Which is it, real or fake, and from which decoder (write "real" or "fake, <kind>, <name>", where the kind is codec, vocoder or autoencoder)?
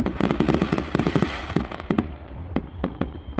fake, vocoder, Vocos